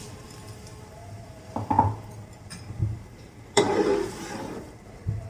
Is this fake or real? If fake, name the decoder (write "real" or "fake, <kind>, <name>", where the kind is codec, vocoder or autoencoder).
fake, vocoder, BigVGAN v2